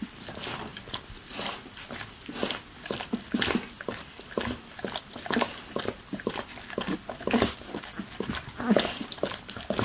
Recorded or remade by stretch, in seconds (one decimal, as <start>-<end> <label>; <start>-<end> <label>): 0.0-9.8 recorded